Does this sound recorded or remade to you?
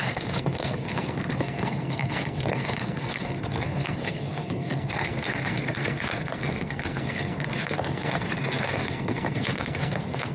remade